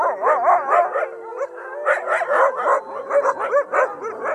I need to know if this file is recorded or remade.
recorded